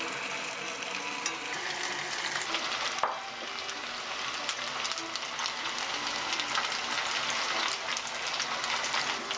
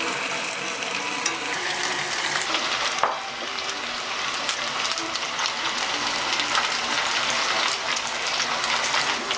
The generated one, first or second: second